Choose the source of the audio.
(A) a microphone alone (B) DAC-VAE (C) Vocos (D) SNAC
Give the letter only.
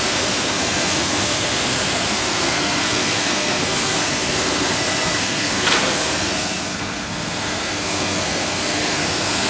D